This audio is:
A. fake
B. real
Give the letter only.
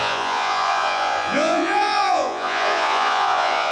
A